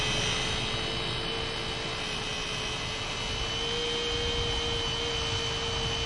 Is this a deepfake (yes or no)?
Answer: no